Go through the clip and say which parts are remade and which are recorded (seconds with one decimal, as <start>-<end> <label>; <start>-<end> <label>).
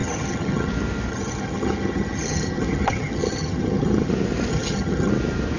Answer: 0.0-0.7 remade; 0.7-1.1 recorded; 1.1-4.1 remade; 4.1-4.5 recorded; 4.5-5.1 remade; 5.1-5.6 recorded